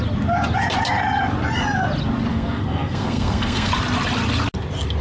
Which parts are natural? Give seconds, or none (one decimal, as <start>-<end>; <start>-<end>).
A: 0.0-2.3; 3.7-5.0